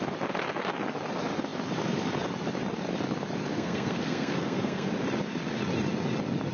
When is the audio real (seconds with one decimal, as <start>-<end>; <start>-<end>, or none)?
0.0-3.5; 4.9-6.5